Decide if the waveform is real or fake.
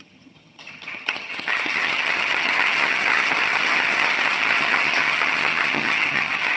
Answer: fake